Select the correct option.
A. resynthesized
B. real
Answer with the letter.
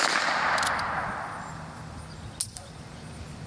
B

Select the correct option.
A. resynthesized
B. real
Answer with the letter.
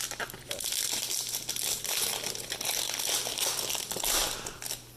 B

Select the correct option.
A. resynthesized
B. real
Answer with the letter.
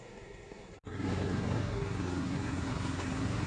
A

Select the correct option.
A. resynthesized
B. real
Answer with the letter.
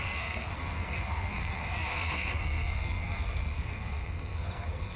A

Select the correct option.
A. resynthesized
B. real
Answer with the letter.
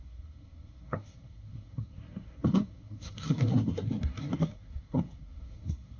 A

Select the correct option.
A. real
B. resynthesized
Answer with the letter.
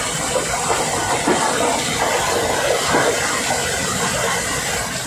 A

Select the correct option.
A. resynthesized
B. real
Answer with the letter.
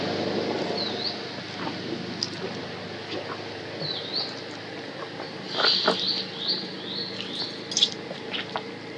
B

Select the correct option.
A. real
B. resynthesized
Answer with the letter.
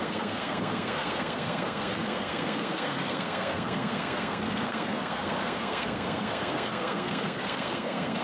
B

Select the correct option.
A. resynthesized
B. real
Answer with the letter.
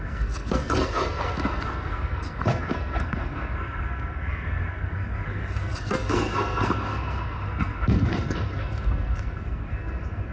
A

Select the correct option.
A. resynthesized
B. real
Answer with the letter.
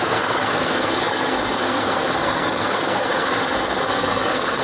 A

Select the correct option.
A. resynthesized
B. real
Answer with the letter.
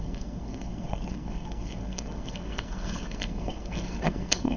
A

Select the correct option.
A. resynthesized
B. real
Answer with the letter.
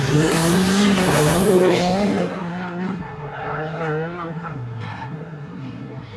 A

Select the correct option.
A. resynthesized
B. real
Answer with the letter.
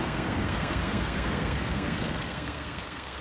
A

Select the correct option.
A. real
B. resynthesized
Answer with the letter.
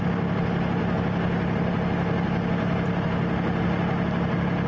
A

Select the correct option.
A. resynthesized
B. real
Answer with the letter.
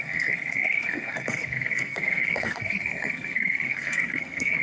A